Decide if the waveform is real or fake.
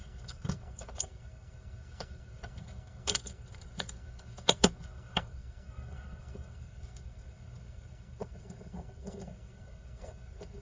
fake